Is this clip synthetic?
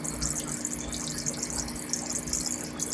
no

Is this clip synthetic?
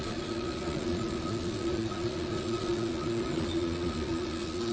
yes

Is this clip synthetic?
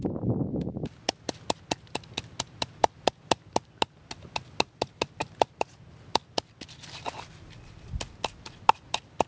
no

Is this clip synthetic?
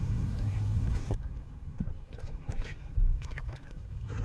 yes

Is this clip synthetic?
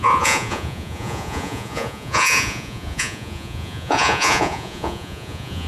yes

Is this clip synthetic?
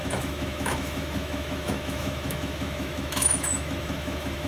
yes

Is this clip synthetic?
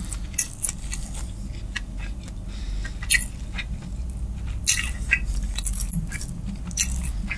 no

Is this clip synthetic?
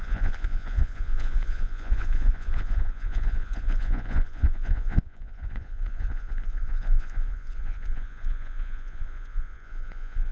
yes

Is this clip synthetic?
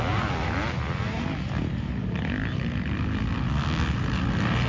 no